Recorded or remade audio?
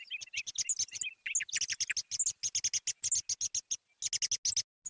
recorded